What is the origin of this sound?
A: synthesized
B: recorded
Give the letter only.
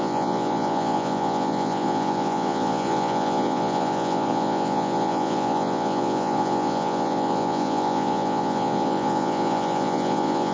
A